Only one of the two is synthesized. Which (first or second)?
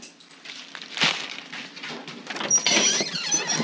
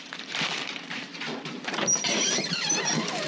second